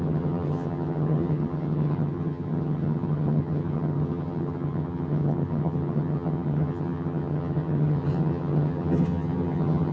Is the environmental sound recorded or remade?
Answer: remade